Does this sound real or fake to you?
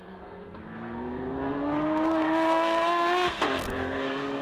fake